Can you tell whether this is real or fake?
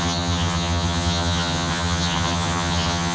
fake